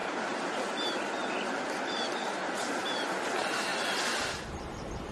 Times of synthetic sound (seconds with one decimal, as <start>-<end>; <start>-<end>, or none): none